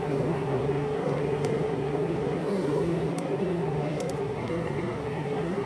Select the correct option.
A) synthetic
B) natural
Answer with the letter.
A